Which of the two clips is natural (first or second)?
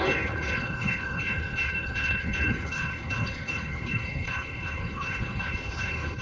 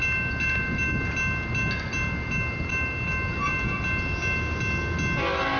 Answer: second